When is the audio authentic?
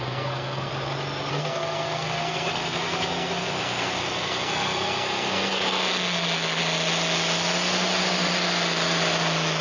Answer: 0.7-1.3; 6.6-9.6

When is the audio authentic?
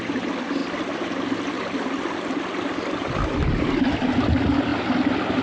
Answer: 0.0-5.4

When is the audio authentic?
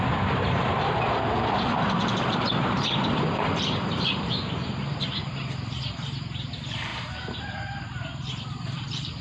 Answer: none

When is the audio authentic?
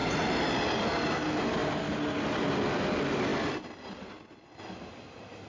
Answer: 0.0-5.5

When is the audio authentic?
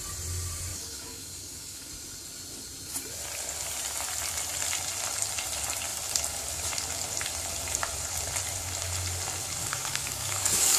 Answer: 0.0-0.7; 1.9-9.6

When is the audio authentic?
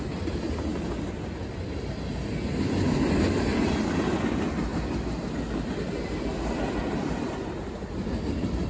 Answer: 0.0-8.7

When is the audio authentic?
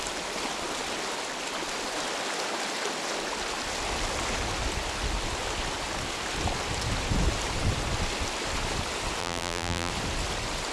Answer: 0.0-9.2; 9.9-10.7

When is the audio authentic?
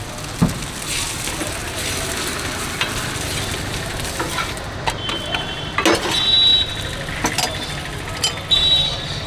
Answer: 0.0-9.3